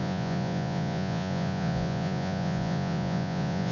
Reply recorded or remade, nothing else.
remade